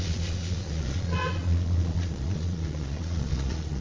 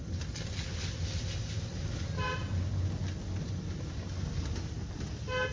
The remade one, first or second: first